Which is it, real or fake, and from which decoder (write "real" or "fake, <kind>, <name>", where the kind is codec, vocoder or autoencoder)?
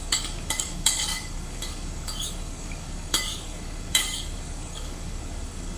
fake, codec, DAC